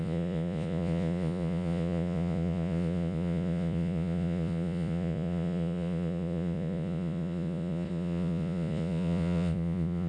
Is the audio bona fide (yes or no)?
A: no